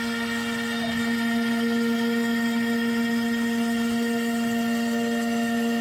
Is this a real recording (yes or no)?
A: yes